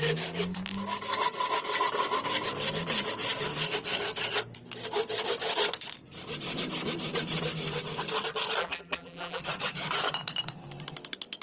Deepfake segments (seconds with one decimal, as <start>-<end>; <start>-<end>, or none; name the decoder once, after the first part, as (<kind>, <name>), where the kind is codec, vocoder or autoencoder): 8.6-9.4 (vocoder, BigVGAN v2)